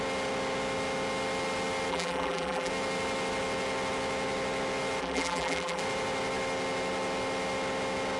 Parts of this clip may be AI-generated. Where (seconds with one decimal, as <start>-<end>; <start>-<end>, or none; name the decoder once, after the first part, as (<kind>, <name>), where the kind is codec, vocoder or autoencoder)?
1.9-2.7 (vocoder, BigVGAN v2); 5.0-5.8